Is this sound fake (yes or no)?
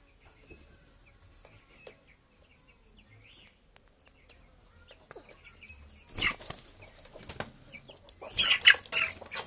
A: no